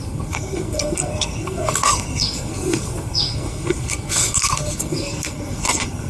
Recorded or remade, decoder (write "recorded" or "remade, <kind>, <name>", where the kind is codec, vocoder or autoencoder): remade, codec, SNAC